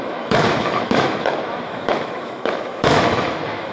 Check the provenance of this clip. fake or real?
fake